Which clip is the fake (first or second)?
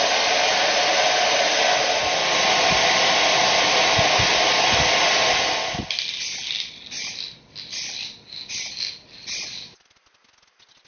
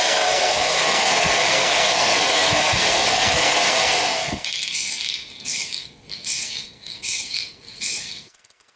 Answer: second